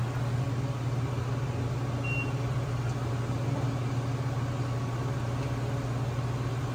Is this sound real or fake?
real